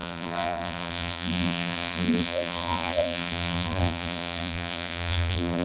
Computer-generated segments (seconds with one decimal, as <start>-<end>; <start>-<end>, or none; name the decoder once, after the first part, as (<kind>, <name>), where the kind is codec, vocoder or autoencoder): 0.0-5.6 (vocoder, BigVGAN v2)